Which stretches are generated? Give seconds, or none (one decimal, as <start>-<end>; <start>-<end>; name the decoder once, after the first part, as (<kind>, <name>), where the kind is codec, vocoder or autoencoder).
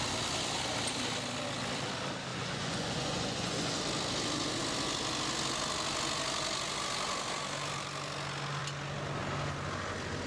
2.3-3.8 (vocoder, Vocos)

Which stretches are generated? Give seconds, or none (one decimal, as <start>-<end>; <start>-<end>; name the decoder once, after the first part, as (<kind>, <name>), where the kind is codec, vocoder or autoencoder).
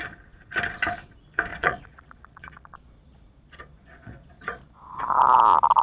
1.5-5.0 (vocoder, Vocos)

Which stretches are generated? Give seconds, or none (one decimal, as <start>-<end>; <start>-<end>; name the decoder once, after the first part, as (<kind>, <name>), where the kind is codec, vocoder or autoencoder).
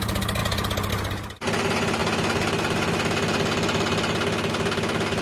none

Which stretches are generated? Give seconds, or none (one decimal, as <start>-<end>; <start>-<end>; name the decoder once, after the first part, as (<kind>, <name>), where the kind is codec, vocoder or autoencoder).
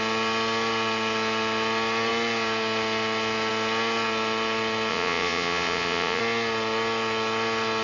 4.9-6.2 (vocoder, Vocos)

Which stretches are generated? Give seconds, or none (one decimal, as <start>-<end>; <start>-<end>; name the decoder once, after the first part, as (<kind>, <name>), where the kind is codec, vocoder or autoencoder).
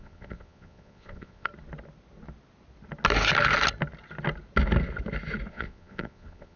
0.0-1.5 (vocoder, Vocos); 5.5-6.6